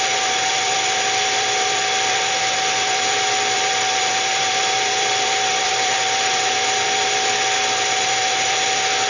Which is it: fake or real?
fake